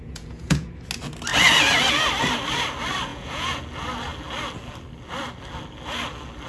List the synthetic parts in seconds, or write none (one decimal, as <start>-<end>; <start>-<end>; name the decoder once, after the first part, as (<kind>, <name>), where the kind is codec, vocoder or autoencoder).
0.0-0.7 (vocoder, Vocos); 3.1-3.6